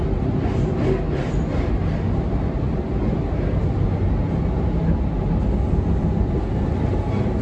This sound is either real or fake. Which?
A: real